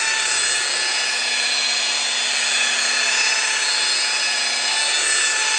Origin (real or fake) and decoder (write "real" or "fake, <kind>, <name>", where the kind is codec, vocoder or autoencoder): real